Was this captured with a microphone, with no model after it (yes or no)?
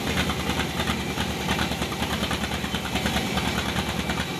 yes